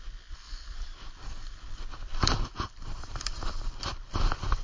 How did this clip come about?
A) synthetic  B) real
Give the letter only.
B